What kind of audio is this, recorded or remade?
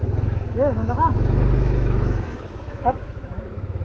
remade